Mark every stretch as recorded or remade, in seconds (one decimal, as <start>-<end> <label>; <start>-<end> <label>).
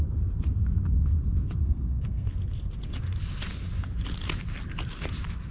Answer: 0.0-1.6 recorded; 1.6-2.3 remade; 2.3-5.5 recorded